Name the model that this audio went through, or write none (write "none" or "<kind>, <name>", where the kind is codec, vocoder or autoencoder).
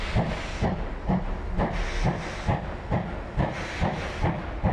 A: none